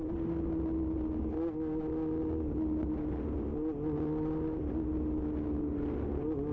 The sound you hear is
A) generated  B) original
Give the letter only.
B